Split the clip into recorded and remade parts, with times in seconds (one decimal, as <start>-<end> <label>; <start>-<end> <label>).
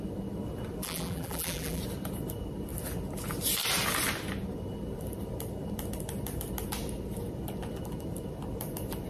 0.0-0.8 recorded; 0.8-1.8 remade; 1.8-9.1 recorded